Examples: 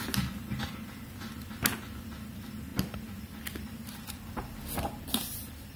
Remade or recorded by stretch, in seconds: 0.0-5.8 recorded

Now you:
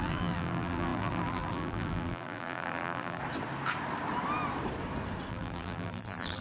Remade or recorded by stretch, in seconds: 0.0-3.2 remade; 3.2-5.3 recorded; 5.3-6.4 remade